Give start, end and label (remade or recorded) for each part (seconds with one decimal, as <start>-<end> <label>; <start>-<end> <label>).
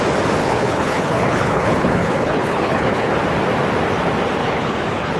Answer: 0.0-0.4 recorded; 0.4-3.1 remade; 3.1-4.4 recorded; 4.4-5.2 remade